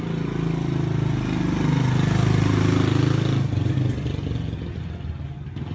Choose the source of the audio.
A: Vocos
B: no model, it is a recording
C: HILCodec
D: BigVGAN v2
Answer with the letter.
B